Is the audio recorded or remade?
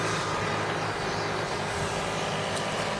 recorded